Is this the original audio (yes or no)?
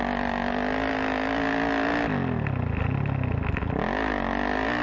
yes